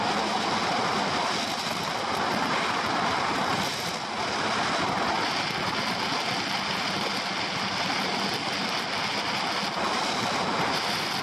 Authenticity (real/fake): real